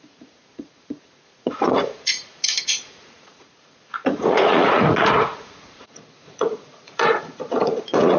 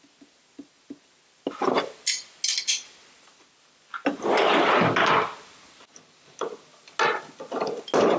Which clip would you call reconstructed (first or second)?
first